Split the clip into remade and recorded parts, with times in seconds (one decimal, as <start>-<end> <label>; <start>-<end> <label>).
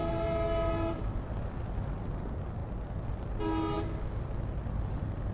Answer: 0.0-5.3 recorded